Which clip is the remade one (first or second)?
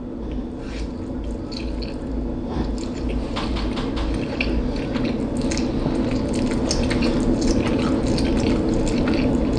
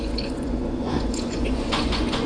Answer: second